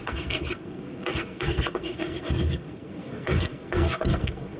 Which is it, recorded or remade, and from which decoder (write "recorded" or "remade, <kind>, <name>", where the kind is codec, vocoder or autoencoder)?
remade, codec, SNAC